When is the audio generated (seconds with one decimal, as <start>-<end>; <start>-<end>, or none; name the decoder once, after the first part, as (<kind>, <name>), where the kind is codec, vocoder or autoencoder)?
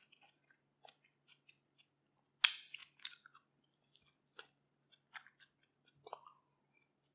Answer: none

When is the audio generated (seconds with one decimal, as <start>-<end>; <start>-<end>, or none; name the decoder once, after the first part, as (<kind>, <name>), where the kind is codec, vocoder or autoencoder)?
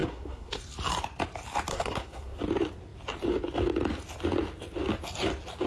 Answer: 0.0-0.6 (codec, SNAC); 1.7-2.4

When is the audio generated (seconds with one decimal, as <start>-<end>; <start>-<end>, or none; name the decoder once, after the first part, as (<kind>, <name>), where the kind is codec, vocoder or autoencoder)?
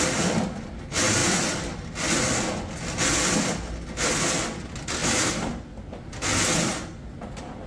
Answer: 1.2-2.1 (vocoder, BigVGAN v2); 5.0-6.1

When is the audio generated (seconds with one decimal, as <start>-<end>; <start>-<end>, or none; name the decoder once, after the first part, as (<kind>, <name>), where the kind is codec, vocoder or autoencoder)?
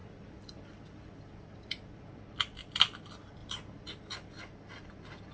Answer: 0.0-3.0 (vocoder, BigVGAN v2); 3.4-3.9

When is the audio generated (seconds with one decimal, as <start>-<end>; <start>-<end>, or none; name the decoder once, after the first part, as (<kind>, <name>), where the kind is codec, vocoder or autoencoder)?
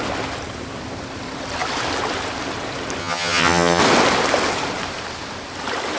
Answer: 3.0-3.8 (vocoder, HiFi-GAN)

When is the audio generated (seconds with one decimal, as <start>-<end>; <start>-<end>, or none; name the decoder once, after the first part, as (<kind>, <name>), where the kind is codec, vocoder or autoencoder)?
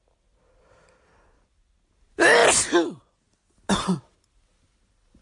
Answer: none